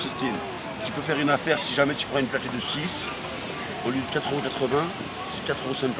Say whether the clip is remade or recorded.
recorded